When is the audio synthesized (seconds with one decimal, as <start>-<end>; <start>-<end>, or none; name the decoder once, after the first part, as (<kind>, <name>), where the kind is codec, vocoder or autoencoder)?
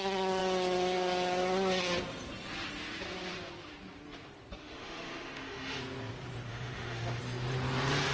4.6-5.8 (autoencoder, DAC-VAE); 6.5-7.2